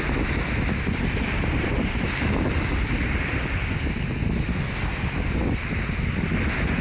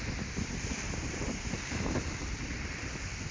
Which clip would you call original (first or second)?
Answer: first